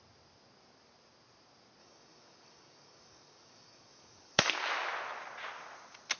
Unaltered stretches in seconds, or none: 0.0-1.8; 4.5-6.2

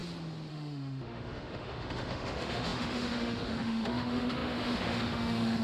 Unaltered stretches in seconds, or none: 0.0-0.5

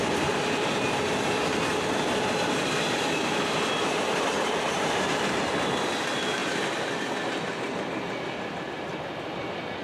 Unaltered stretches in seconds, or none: 0.0-1.7; 5.5-6.4; 6.9-9.8

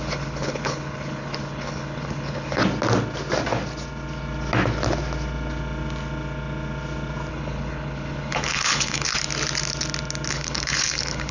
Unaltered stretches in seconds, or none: 2.6-7.3; 9.1-10.3

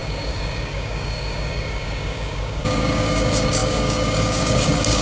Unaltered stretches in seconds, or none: none

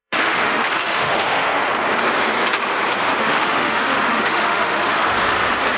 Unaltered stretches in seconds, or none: 1.6-3.2; 5.1-5.8

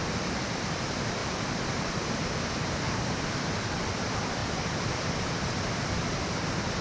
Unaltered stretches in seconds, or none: none